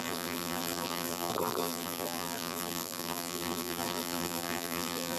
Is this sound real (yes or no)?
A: no